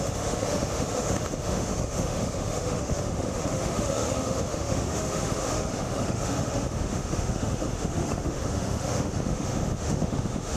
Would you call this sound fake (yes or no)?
yes